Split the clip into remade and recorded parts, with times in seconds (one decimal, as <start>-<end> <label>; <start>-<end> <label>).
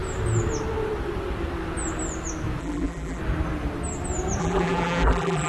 0.0-2.6 recorded; 2.6-3.2 remade; 3.2-4.4 recorded; 4.4-5.5 remade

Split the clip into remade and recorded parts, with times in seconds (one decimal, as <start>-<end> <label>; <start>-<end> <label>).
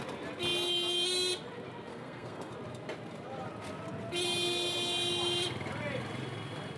0.0-1.9 recorded; 1.9-2.5 remade; 2.5-6.8 recorded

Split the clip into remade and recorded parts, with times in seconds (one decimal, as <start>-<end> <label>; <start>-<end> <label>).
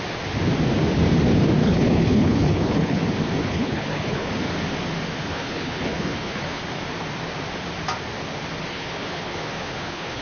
0.0-1.6 recorded; 1.6-3.0 remade; 3.0-3.4 recorded; 3.4-4.3 remade; 4.3-5.2 recorded; 5.2-6.6 remade; 6.6-8.7 recorded; 8.7-10.2 remade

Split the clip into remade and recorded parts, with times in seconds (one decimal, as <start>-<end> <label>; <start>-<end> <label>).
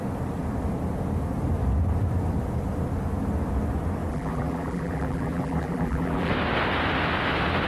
0.0-4.1 recorded; 4.1-6.3 remade; 6.3-7.7 recorded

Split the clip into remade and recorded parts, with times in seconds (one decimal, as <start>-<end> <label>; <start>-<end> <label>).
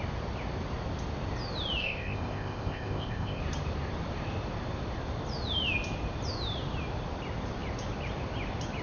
0.0-1.8 recorded; 1.8-3.4 remade; 3.4-8.8 recorded